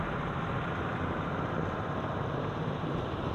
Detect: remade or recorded remade